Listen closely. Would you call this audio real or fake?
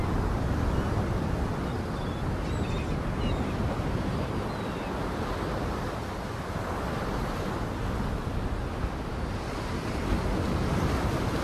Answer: real